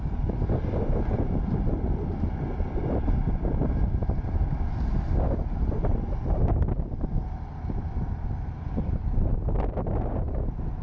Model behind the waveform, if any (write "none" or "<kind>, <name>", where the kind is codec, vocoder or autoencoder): none